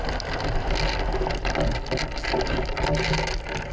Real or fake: real